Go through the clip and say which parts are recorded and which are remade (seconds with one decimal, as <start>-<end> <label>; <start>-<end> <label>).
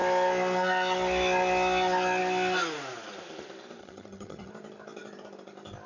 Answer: 0.0-3.8 recorded; 3.8-4.5 remade; 4.5-5.9 recorded